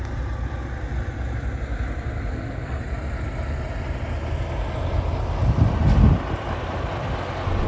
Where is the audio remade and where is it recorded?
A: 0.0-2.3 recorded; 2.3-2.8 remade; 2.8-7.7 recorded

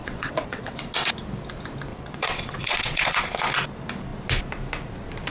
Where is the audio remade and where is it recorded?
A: 0.0-0.8 remade; 0.8-1.9 recorded; 1.9-3.2 remade; 3.2-5.3 recorded

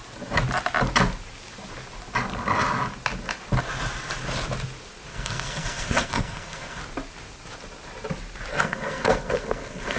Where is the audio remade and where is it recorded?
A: 0.0-5.1 recorded; 5.1-6.8 remade; 6.8-8.5 recorded; 8.5-10.0 remade